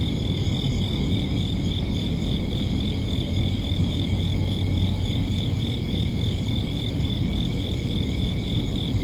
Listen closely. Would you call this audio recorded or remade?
remade